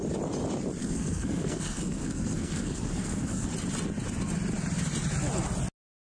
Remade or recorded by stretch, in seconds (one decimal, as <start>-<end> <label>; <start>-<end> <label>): 0.0-0.8 recorded; 0.8-3.5 remade; 3.5-6.0 recorded